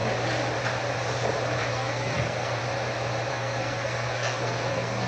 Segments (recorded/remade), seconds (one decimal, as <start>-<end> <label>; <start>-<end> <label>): 0.0-1.7 recorded; 1.7-2.6 remade; 2.6-3.3 recorded; 3.3-5.1 remade